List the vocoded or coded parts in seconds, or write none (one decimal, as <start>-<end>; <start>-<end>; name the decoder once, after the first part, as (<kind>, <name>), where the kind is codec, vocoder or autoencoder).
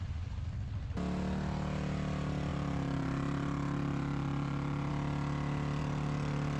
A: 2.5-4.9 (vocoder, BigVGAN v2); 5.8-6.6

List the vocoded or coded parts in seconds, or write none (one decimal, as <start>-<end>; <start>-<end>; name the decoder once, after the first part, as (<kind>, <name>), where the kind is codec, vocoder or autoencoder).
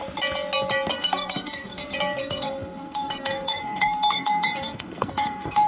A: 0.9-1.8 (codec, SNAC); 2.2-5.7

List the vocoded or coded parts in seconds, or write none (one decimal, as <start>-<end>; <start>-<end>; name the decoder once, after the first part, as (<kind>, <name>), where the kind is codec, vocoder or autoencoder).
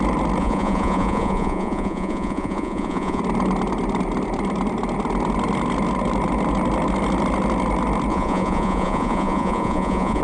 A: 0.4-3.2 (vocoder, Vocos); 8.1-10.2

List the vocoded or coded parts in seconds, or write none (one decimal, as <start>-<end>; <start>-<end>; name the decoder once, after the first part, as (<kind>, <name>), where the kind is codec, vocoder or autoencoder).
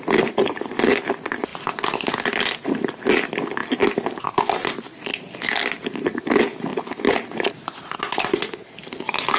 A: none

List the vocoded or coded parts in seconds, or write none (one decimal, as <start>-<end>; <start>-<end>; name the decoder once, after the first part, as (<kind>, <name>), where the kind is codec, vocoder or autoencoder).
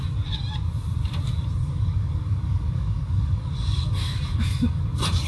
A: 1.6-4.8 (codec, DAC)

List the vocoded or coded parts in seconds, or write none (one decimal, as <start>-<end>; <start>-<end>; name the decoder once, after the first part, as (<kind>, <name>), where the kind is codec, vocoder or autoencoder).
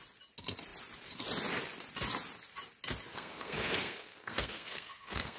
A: 3.1-5.4 (codec, SNAC)